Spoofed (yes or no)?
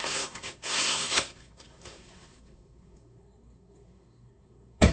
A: yes